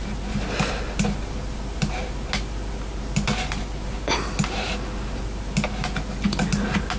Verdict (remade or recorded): recorded